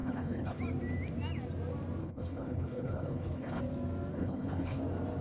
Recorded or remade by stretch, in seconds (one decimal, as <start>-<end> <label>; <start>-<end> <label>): 0.0-0.6 remade; 0.6-2.0 recorded; 2.0-3.6 remade; 3.6-4.1 recorded; 4.1-4.8 remade; 4.8-5.2 recorded